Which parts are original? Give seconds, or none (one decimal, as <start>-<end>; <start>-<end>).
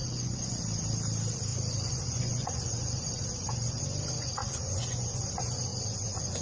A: 0.6-1.5; 3.8-4.4; 5.3-5.7